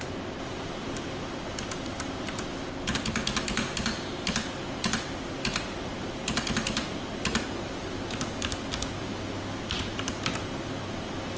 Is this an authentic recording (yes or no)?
yes